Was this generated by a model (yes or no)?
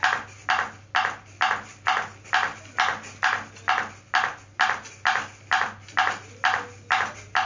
no